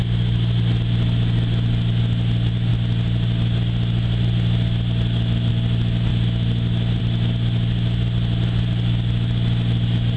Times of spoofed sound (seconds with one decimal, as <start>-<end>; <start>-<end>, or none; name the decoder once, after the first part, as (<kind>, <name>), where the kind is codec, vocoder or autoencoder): none

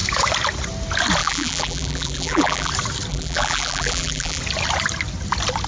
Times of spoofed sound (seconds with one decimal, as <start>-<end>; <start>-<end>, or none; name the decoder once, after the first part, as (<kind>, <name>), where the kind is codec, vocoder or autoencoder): 1.2-2.7 (vocoder, BigVGAN v2); 3.1-4.4

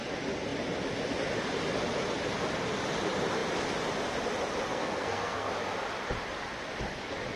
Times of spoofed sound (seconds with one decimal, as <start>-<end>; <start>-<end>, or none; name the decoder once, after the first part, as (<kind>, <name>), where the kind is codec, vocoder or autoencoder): 4.7-5.5 (codec, SNAC)

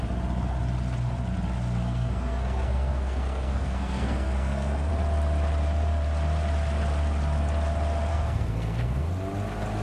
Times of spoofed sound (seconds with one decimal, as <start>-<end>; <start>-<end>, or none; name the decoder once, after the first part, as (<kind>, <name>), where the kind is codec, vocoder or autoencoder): 1.8-4.9 (codec, SNAC); 8.1-9.1

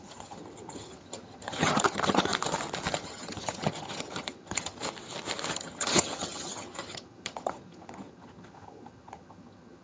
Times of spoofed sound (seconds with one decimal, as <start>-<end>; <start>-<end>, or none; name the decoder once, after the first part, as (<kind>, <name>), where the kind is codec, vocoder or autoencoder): 0.0-2.3 (vocoder, HiFi-GAN); 2.9-4.8; 5.5-9.8

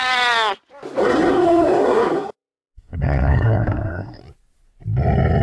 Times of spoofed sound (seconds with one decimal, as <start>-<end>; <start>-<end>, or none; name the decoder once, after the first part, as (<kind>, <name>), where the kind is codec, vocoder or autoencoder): 1.0-4.2 (codec, SNAC)